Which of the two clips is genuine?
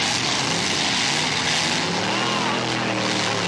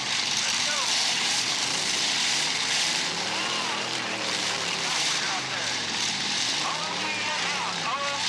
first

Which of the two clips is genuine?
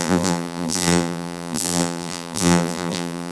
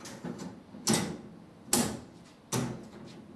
second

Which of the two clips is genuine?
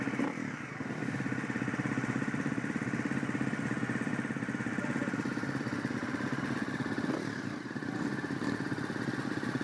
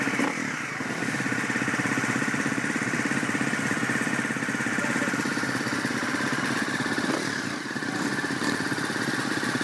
first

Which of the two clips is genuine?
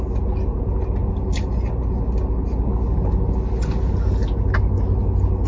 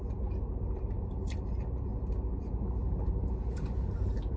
first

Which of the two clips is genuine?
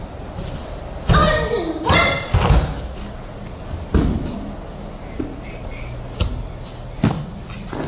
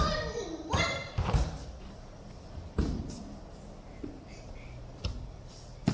first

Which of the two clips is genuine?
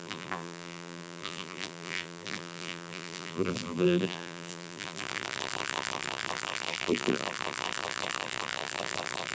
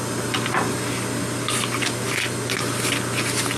second